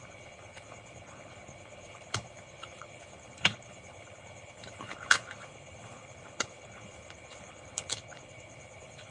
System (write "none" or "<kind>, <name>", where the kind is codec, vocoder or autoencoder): codec, HILCodec